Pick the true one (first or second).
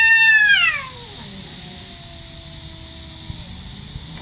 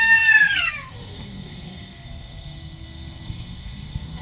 first